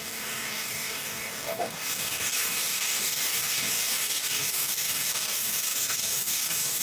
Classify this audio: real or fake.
fake